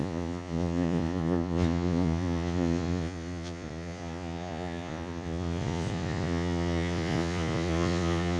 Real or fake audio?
fake